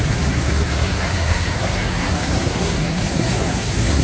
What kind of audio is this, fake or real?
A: fake